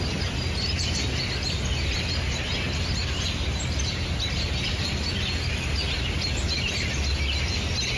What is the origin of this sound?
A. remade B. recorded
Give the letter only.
B